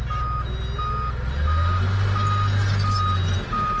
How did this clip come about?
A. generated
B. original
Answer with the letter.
B